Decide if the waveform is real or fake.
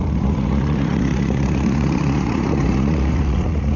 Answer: fake